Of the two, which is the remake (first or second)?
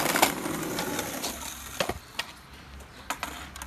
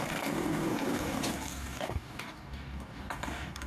second